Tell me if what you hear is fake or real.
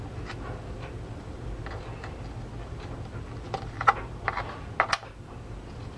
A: real